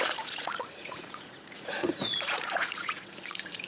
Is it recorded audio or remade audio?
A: remade